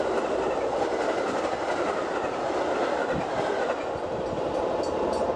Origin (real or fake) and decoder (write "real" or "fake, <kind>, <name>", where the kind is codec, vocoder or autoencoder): real